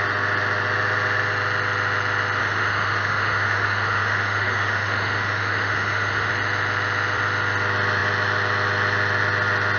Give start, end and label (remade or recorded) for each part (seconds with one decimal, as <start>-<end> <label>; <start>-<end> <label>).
0.0-2.4 recorded; 2.4-6.3 remade; 6.3-9.8 recorded